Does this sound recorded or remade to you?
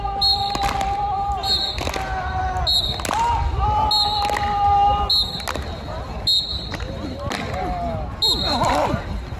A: recorded